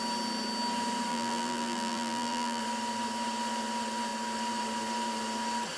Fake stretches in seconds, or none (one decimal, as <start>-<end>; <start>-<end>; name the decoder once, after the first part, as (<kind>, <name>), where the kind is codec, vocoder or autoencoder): 1.1-2.6 (vocoder, BigVGAN v2)